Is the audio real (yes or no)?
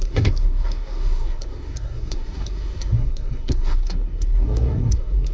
no